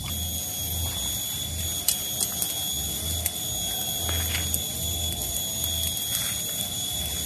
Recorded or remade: recorded